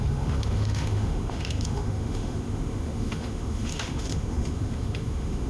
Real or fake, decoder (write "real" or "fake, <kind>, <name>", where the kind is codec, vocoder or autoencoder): fake, autoencoder, DAC-VAE